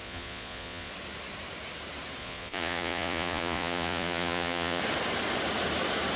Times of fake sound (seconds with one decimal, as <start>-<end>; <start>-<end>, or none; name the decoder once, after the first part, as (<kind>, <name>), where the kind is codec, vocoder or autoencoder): 0.0-0.9 (vocoder, Vocos); 2.2-4.8